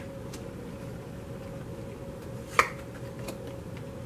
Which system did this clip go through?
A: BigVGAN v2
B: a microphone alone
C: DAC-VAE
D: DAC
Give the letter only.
B